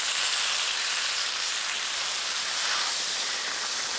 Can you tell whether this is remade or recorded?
recorded